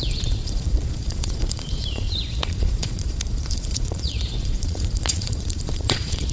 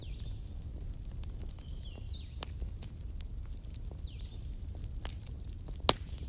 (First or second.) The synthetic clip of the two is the first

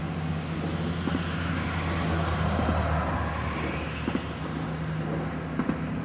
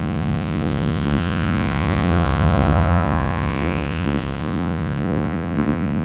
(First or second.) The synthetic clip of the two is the second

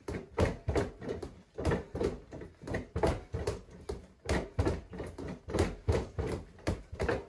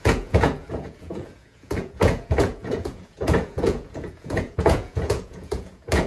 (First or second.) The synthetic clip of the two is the second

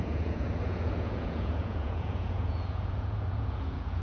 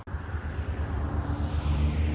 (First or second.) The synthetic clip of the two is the first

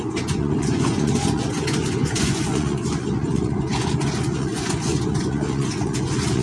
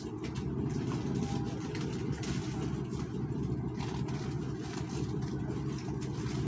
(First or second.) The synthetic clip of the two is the first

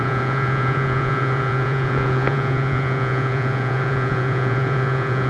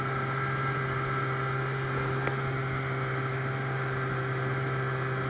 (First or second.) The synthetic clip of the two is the first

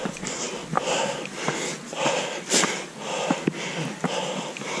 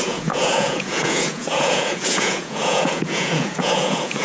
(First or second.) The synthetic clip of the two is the second